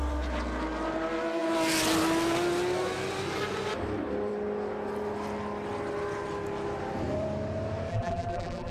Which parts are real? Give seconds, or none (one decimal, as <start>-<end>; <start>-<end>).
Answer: 0.0-7.9